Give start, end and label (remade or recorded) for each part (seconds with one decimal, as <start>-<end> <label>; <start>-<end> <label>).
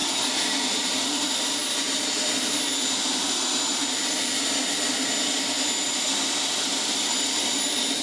0.0-1.0 recorded; 1.0-1.6 remade; 1.6-6.4 recorded; 6.4-8.0 remade